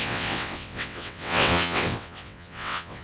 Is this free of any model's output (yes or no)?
no